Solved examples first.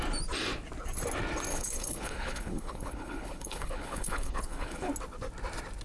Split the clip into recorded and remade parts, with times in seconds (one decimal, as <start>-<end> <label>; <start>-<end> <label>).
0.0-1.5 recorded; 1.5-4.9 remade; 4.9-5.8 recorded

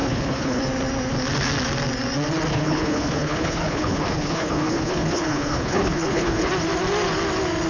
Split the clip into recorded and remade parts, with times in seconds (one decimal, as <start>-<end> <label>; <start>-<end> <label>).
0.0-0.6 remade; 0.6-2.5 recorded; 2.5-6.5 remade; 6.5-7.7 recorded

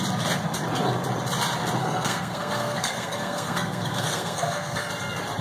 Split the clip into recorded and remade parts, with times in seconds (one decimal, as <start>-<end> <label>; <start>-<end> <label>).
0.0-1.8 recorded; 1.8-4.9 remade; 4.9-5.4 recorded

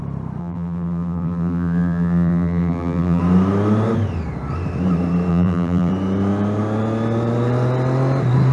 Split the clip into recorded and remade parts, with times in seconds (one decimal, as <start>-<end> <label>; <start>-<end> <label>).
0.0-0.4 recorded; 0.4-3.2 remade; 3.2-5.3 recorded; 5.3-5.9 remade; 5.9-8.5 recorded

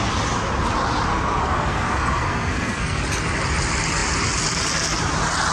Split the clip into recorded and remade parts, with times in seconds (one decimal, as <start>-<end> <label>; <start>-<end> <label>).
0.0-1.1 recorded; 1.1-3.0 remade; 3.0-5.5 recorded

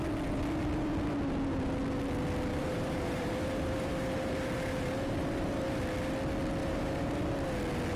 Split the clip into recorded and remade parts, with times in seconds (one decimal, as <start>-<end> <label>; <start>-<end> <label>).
0.0-2.5 recorded; 2.5-5.8 remade; 5.8-6.6 recorded; 6.6-7.2 remade; 7.2-8.0 recorded